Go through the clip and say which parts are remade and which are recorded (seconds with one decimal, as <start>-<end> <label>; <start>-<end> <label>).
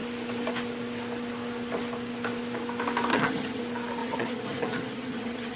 0.0-3.1 recorded; 3.1-3.6 remade; 3.6-4.0 recorded; 4.0-5.6 remade